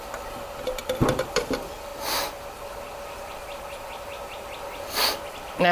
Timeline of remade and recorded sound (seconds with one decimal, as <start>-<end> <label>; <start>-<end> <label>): 0.0-5.7 recorded